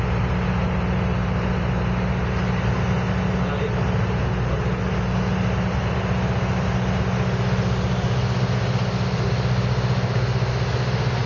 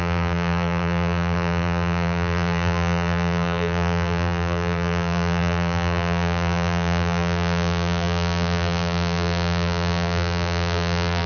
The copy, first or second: second